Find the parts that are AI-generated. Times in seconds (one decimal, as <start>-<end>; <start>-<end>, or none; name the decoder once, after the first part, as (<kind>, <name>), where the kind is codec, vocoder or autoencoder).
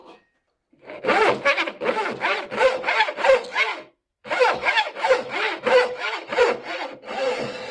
3.7-6.4 (autoencoder, DAC-VAE)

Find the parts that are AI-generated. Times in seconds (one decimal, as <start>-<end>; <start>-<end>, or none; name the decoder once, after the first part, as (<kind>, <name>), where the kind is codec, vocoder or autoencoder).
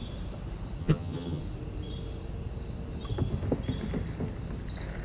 0.8-1.4 (vocoder, HiFi-GAN)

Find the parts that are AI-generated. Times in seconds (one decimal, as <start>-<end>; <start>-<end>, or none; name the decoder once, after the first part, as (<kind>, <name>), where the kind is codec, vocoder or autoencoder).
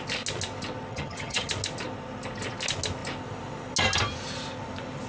0.9-1.5 (vocoder, HiFi-GAN)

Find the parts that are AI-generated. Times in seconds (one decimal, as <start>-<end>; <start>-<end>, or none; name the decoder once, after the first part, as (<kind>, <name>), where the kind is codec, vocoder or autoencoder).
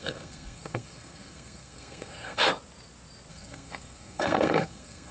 0.0-2.5 (codec, SNAC); 3.3-5.1